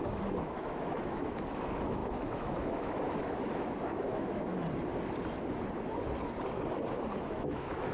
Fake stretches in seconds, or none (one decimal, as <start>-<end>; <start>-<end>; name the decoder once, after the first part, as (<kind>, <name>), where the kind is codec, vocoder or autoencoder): 0.0-4.5 (autoencoder, DAC-VAE); 7.2-7.9